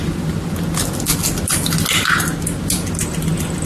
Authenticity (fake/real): real